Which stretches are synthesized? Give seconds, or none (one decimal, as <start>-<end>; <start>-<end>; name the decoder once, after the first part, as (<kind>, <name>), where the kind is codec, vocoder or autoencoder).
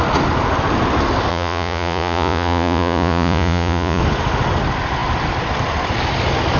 1.3-4.0 (vocoder, Vocos)